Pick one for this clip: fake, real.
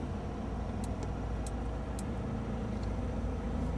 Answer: real